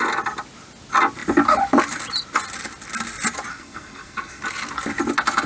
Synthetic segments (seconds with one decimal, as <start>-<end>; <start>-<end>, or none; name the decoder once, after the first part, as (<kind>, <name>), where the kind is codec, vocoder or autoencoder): 3.5-4.4 (codec, SNAC)